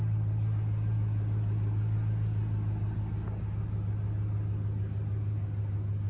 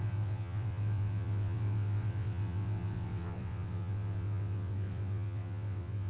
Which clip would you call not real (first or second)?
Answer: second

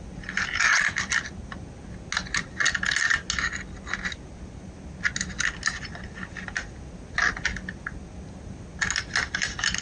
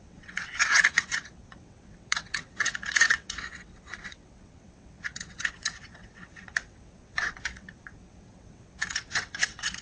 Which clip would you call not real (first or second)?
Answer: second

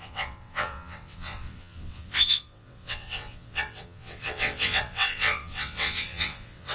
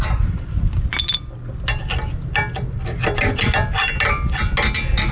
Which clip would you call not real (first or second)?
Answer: first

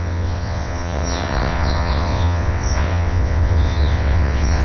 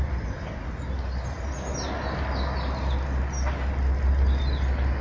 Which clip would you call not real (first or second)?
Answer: first